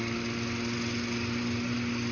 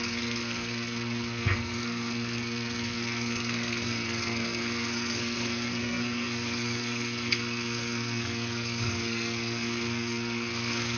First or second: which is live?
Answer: first